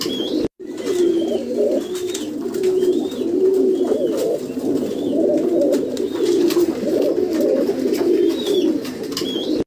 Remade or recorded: recorded